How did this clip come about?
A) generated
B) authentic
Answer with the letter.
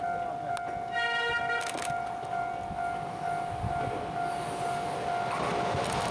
B